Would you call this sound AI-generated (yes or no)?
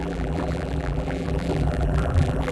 yes